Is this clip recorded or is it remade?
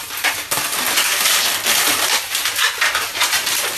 recorded